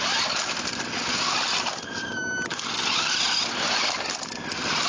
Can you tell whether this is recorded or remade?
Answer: recorded